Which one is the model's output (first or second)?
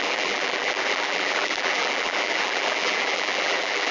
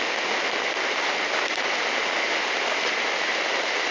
first